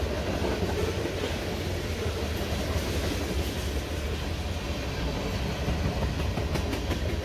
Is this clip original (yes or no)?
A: yes